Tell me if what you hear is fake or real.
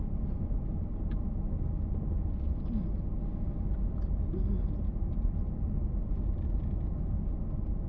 real